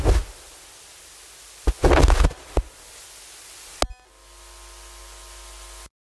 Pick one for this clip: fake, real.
real